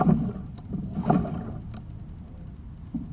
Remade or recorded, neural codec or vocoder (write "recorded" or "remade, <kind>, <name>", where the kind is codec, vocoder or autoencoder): recorded